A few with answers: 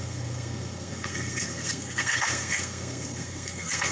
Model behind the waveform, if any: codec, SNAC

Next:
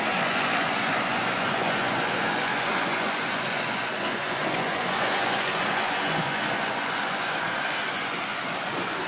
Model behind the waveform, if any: vocoder, Vocos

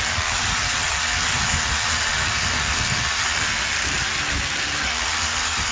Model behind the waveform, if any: none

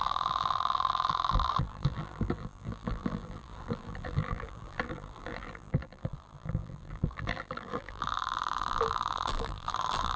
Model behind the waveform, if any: vocoder, BigVGAN v2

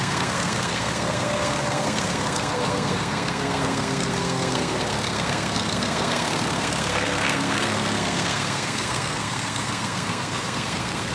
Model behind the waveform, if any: codec, SNAC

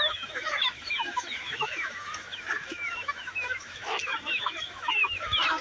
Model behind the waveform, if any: autoencoder, DAC-VAE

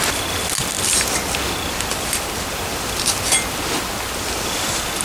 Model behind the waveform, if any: none